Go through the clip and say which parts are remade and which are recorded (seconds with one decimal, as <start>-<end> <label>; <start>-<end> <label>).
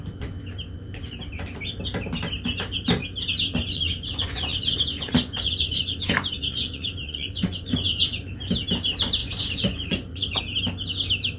0.0-3.7 recorded; 3.7-8.3 remade; 8.3-9.2 recorded; 9.2-10.4 remade; 10.4-11.4 recorded